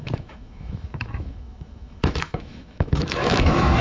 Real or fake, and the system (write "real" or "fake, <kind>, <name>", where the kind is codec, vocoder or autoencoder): fake, autoencoder, DAC-VAE